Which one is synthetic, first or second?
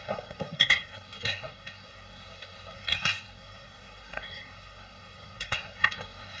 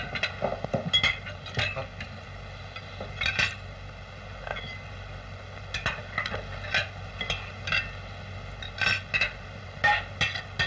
first